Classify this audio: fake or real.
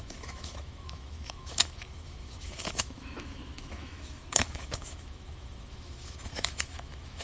fake